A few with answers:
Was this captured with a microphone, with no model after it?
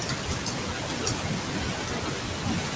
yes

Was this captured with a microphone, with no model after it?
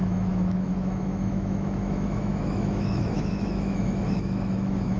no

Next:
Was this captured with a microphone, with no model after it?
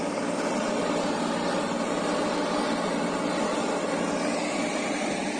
yes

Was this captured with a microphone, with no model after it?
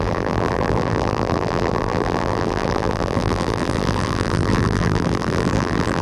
no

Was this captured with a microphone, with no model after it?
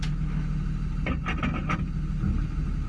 yes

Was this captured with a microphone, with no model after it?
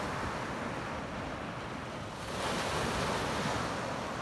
yes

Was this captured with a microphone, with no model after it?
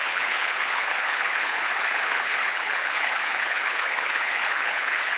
no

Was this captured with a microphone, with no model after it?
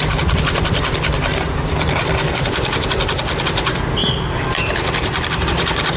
yes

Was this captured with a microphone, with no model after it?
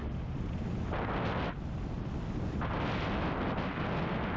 yes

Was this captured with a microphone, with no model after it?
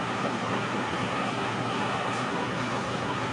no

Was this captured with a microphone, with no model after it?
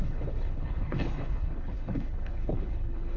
no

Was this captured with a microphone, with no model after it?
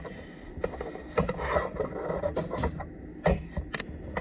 yes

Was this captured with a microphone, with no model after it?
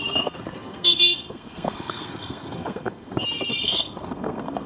no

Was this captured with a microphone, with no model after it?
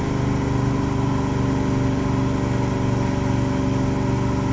yes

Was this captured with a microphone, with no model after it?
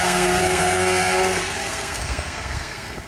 no